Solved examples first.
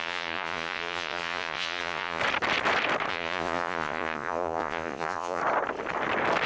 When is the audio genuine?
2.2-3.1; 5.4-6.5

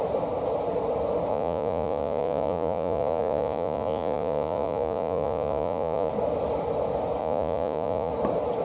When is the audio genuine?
0.0-1.3; 6.1-7.2; 8.1-8.6

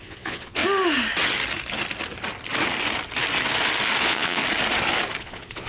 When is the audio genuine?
0.6-4.0; 4.4-5.2